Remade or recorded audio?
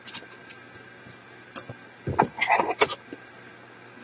recorded